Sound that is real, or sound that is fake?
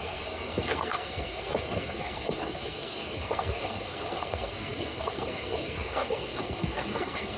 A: fake